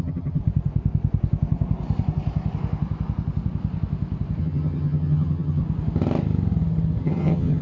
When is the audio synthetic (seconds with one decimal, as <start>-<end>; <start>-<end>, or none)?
0.0-0.4; 4.4-5.6; 7.0-7.6

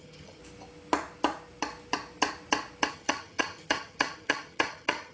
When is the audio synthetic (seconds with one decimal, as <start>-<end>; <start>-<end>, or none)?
0.0-0.4; 2.9-5.1

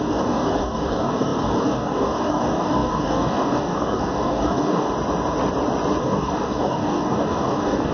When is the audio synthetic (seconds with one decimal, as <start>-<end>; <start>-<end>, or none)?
0.0-4.9; 6.0-7.9